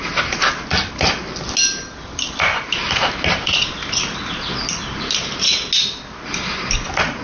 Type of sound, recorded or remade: recorded